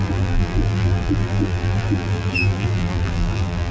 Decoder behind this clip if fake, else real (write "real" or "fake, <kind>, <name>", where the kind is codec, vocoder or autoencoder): fake, vocoder, BigVGAN v2